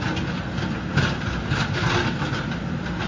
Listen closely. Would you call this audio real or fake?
real